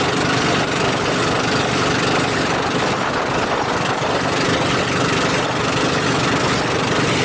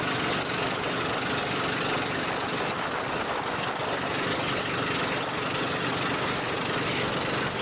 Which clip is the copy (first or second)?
first